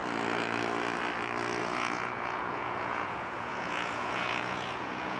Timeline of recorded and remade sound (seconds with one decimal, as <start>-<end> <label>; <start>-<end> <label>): 0.0-1.6 recorded; 1.6-5.2 remade